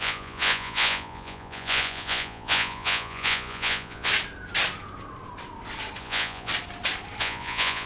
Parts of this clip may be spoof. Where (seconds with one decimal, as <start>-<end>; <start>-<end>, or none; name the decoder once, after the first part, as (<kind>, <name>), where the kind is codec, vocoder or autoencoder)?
0.0-4.1 (vocoder, Vocos); 6.0-6.5; 7.2-7.9